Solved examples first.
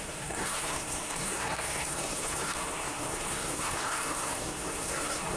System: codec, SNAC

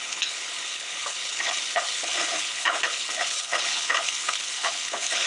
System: codec, HILCodec